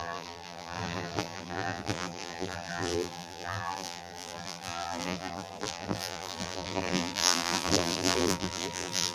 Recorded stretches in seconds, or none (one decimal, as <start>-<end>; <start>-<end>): none

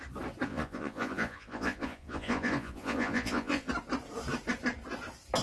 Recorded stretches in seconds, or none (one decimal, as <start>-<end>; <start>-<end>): 0.0-0.5; 3.7-5.4

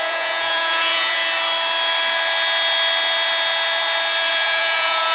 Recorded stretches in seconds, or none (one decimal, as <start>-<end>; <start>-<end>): 1.2-4.3

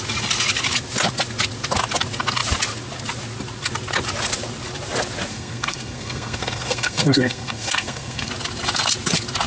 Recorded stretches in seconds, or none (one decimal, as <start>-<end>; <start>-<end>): 0.0-5.3; 8.3-9.5

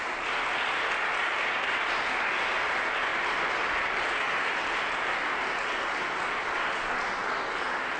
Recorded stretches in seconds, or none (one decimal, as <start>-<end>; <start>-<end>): 0.0-8.0

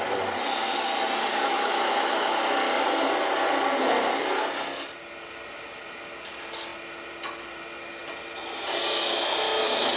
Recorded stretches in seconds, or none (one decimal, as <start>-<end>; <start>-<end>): 0.0-1.3; 2.4-10.0

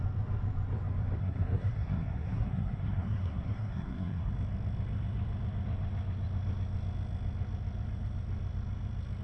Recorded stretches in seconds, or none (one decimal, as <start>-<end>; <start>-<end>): 0.0-1.2; 4.3-9.2